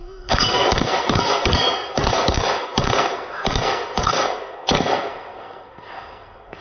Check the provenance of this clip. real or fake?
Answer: fake